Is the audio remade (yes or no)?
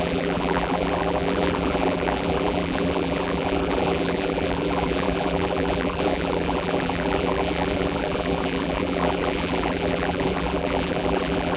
yes